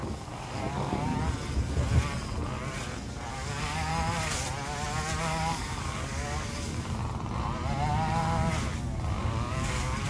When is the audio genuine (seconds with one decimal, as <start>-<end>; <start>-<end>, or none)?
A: 1.1-3.3; 3.9-5.2; 7.0-9.2